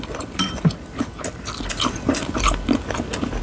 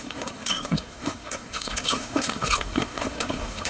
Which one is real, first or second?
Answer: first